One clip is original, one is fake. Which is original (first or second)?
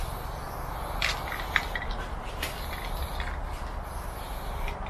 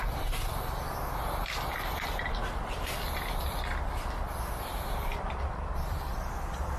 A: first